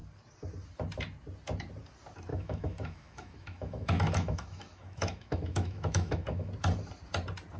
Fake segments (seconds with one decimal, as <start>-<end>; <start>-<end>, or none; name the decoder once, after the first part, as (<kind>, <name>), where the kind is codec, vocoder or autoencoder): 2.3-6.5 (autoencoder, DAC-VAE)